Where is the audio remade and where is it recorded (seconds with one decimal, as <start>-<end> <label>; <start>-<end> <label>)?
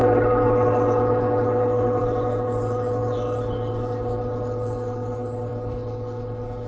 0.0-6.7 remade